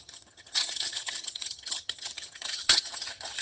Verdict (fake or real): fake